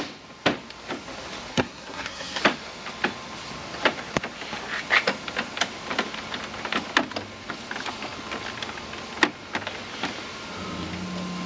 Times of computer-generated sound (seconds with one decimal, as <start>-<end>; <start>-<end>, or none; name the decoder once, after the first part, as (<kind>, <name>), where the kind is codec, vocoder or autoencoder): 1.5-2.4 (codec, SNAC)

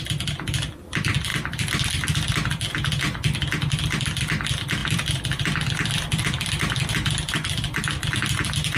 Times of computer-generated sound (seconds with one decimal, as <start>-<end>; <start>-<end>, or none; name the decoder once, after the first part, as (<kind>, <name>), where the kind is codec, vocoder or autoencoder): 1.3-1.9 (vocoder, BigVGAN v2); 4.8-6.9

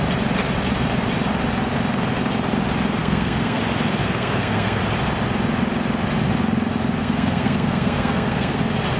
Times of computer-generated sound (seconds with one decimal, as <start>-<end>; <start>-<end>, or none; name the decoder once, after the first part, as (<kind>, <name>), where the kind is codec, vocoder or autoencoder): 3.0-3.6 (codec, SNAC); 4.0-4.8; 7.0-8.6

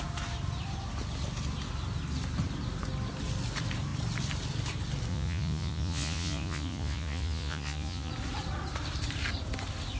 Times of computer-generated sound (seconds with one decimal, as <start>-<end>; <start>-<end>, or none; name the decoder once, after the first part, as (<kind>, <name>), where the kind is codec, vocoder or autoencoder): 5.1-8.1 (vocoder, Vocos)

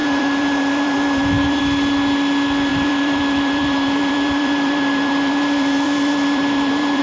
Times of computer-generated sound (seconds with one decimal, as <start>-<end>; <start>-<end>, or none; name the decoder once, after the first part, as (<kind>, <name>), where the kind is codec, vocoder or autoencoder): 0.0-1.6 (vocoder, BigVGAN v2); 2.7-7.0

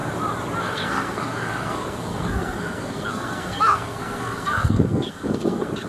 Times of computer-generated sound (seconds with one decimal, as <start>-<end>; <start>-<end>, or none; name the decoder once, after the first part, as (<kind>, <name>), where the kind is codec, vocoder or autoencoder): 0.6-5.9 (codec, SNAC)

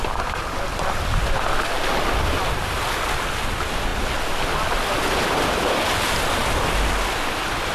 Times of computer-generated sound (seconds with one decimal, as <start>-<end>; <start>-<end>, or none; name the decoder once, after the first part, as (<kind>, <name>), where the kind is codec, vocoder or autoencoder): none